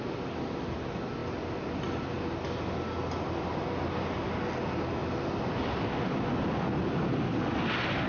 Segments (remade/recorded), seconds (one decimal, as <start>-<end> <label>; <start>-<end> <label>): 0.0-8.1 recorded